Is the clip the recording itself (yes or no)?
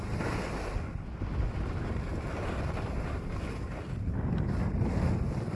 yes